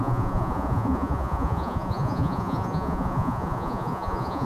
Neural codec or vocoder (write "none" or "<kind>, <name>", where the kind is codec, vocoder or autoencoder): vocoder, Vocos